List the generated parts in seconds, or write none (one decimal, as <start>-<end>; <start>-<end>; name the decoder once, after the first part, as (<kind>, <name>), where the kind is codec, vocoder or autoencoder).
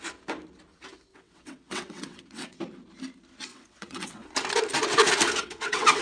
1.1-2.6 (vocoder, WaveNeXt); 3.5-4.3; 5.4-6.0